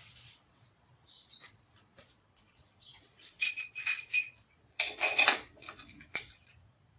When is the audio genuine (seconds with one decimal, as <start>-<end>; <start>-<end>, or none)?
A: none